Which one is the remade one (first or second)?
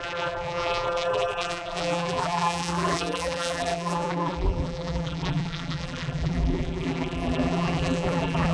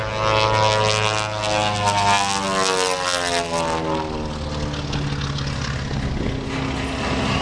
first